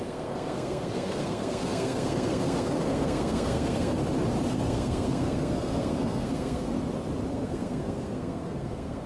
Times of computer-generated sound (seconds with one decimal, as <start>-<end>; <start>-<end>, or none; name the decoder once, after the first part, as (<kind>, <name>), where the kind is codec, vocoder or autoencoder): 0.0-4.0 (codec, SNAC); 4.5-6.7; 7.3-9.1